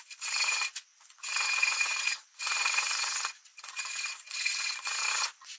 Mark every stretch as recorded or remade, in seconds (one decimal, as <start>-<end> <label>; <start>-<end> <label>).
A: 0.0-5.6 remade